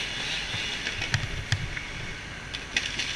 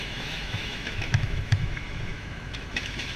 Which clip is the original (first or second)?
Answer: first